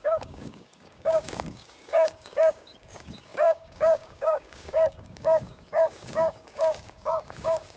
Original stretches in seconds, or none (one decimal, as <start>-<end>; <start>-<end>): none